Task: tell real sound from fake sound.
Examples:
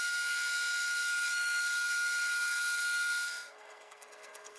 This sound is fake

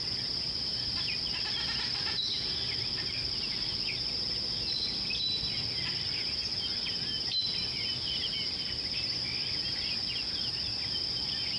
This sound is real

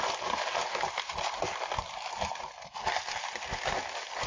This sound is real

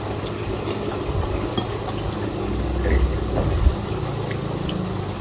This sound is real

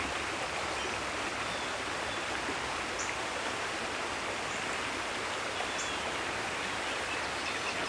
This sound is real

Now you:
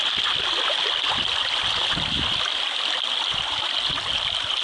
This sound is real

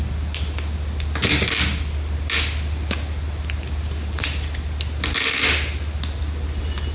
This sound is real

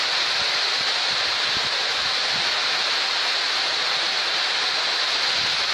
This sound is real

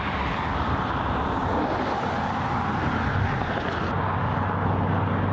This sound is real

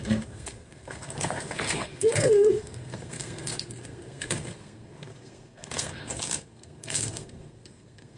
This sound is fake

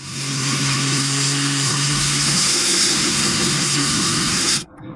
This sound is fake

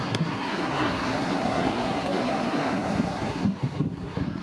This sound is fake